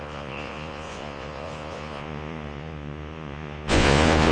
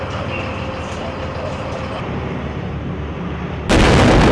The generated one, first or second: first